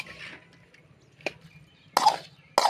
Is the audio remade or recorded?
recorded